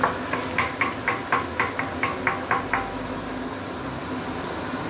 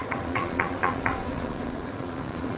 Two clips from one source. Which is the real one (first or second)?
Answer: first